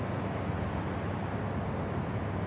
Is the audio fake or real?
real